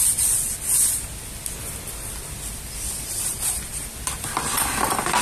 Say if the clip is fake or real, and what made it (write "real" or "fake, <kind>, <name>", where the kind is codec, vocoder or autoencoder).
real